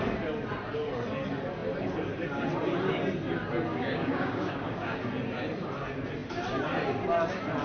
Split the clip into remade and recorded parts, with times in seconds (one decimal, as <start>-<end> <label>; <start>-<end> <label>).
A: 0.0-3.7 recorded; 3.7-5.0 remade; 5.0-7.6 recorded